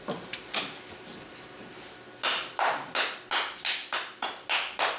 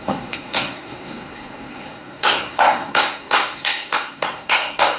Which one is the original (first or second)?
first